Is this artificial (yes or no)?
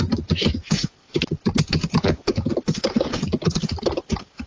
no